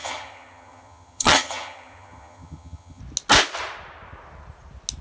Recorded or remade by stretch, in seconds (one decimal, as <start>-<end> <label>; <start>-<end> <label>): 0.0-3.0 remade; 3.0-5.0 recorded